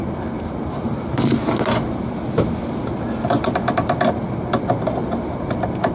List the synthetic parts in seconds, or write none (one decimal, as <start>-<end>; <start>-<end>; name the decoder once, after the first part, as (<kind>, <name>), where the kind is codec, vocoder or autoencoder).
none